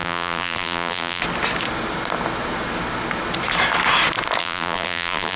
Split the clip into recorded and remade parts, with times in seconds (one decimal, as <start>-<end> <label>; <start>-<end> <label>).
0.0-1.2 remade; 1.2-4.4 recorded; 4.4-5.4 remade